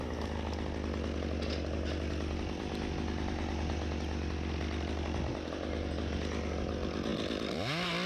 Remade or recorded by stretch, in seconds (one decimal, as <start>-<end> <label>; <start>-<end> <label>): 0.0-8.1 recorded